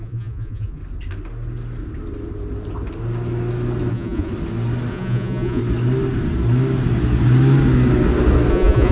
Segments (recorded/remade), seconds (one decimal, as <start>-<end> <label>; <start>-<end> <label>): 0.0-0.8 remade; 0.8-3.9 recorded; 3.9-4.3 remade; 4.3-4.9 recorded; 4.9-5.6 remade; 5.6-8.5 recorded; 8.5-8.9 remade